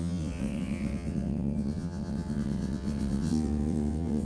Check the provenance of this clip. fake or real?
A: fake